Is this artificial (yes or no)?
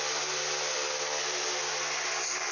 no